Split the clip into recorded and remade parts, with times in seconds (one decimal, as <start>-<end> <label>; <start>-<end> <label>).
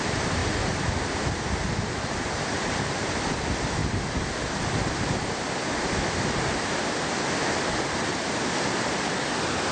0.0-0.4 remade; 0.4-2.1 recorded; 2.1-3.8 remade; 3.8-5.8 recorded; 5.8-9.7 remade